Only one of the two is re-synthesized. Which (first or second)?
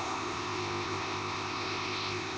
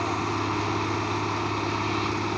first